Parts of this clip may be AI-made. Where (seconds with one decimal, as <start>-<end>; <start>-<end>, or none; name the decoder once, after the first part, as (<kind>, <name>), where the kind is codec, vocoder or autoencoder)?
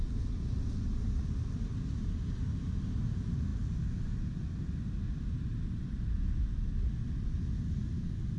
none